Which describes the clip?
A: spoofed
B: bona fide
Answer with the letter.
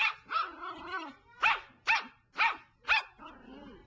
A